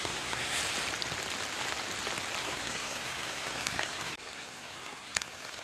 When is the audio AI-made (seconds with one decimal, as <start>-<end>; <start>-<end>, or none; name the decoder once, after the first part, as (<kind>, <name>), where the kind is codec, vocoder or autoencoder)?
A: 0.0-0.6 (codec, SNAC); 2.4-5.6